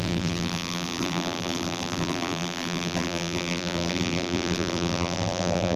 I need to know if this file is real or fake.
fake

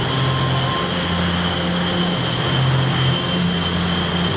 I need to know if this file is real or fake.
real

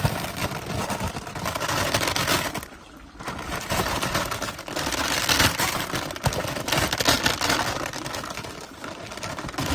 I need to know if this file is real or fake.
real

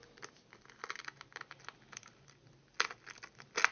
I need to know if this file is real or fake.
real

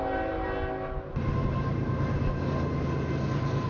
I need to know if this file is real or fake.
real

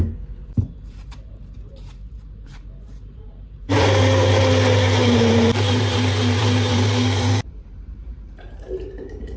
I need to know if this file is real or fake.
fake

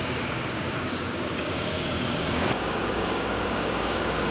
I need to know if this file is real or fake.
fake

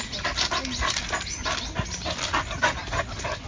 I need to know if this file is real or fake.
real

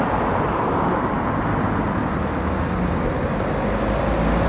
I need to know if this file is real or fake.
real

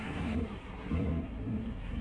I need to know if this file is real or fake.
fake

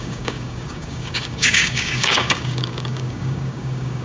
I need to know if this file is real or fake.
fake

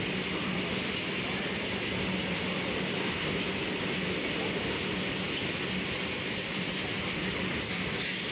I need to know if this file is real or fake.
real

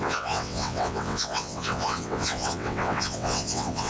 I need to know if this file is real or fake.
fake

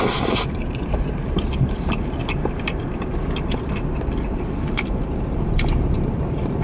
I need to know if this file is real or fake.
fake